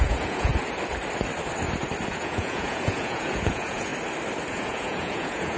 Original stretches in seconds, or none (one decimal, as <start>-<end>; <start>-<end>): 0.5-2.1; 3.9-4.5